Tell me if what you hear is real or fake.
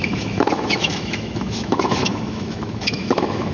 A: fake